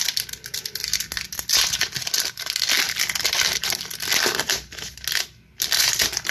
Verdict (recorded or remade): recorded